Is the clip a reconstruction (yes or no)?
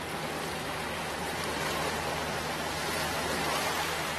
yes